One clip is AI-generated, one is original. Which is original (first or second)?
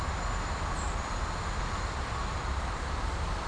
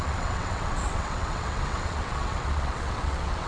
first